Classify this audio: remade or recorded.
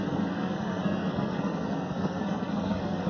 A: remade